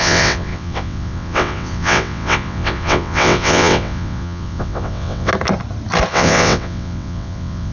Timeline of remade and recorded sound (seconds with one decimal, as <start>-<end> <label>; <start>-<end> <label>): 0.0-5.3 remade; 5.3-6.1 recorded; 6.1-7.7 remade